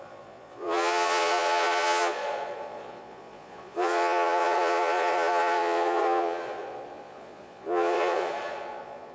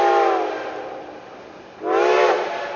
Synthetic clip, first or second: first